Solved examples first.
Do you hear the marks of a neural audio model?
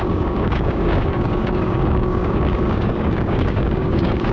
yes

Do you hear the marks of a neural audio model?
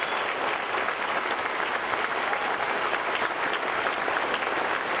no